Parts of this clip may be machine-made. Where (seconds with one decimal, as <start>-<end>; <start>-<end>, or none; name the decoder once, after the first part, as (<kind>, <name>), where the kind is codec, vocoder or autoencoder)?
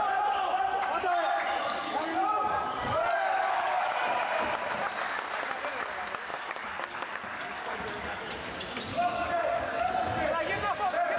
1.6-4.2 (codec, DAC); 6.3-8.3; 8.9-9.9